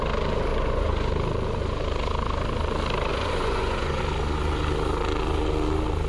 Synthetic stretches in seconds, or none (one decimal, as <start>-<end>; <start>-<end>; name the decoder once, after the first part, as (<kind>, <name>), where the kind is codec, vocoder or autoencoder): 0.5-1.1 (vocoder, Vocos); 3.1-4.0